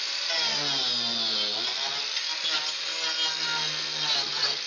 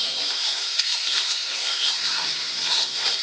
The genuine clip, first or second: first